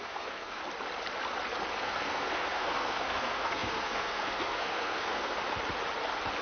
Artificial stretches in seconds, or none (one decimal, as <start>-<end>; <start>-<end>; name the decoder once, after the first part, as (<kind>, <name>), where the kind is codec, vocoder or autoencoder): 0.0-0.6 (codec, SNAC); 1.8-5.4